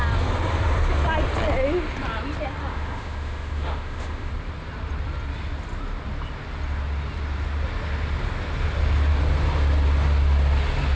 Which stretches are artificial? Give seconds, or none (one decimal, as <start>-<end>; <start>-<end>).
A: 2.7-4.3